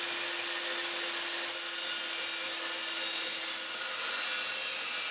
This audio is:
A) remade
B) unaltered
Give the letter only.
B